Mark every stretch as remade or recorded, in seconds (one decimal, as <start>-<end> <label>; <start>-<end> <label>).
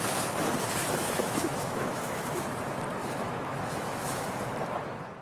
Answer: 0.0-0.8 recorded; 0.8-2.6 remade; 2.6-3.0 recorded; 3.0-4.3 remade; 4.3-5.2 recorded